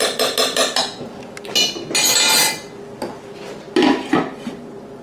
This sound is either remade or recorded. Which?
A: recorded